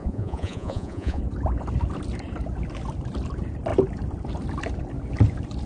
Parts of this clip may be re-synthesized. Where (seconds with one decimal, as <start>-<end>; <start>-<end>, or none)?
0.0-1.2